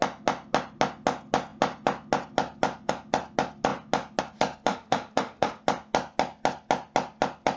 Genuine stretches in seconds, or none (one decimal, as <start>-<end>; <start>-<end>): 0.0-4.7; 5.6-7.6